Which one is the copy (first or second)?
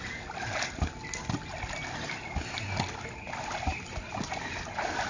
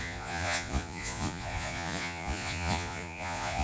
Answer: second